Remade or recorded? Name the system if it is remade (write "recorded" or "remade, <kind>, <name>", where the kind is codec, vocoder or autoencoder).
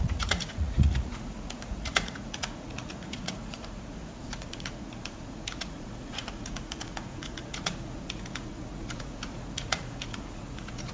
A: remade, vocoder, Vocos